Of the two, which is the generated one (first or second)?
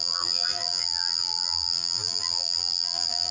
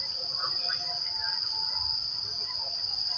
first